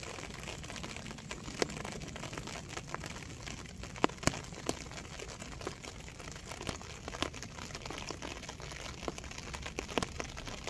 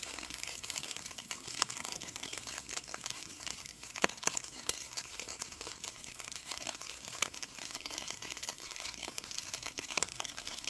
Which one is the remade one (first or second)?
second